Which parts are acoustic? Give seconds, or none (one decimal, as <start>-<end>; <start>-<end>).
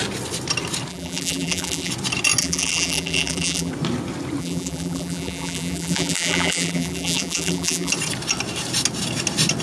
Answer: 0.0-0.9; 1.9-2.4; 3.7-4.4; 7.9-9.6